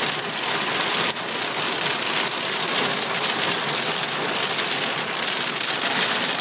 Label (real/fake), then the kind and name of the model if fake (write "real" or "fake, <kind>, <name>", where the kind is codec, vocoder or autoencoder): real